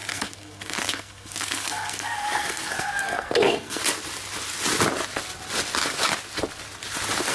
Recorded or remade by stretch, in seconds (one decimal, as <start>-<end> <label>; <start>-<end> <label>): 0.0-3.8 remade; 3.8-7.3 recorded